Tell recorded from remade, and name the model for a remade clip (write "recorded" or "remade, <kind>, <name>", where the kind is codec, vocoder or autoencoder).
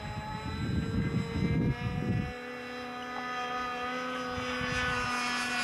recorded